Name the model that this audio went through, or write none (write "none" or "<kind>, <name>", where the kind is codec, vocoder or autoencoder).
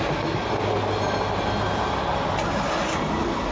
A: none